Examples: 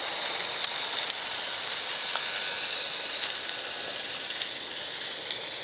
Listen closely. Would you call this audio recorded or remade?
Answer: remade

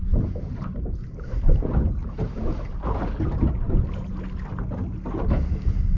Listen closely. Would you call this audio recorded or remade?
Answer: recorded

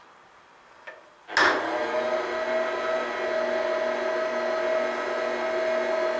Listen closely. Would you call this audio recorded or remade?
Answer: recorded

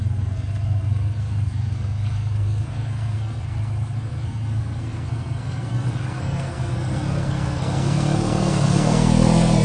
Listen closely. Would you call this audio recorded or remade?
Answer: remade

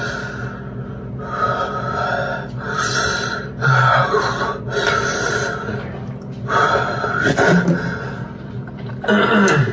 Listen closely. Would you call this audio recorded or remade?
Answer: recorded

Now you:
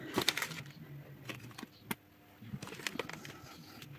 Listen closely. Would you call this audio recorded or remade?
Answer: recorded